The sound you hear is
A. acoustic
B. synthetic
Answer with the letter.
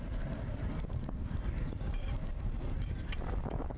B